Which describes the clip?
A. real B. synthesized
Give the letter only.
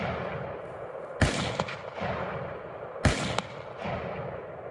A